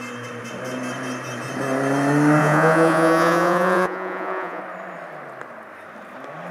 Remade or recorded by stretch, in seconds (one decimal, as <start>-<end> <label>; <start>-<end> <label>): 0.0-2.4 recorded; 2.4-4.6 remade; 4.6-6.5 recorded